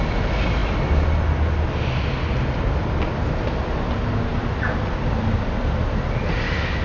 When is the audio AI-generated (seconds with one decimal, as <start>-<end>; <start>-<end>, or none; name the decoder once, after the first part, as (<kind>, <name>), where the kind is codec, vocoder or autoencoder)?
4.3-5.2 (vocoder, BigVGAN v2)